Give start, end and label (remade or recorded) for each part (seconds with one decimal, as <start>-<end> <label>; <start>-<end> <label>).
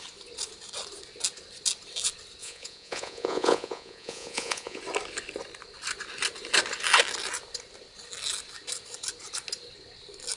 0.0-2.4 recorded; 2.4-4.8 remade; 4.8-10.4 recorded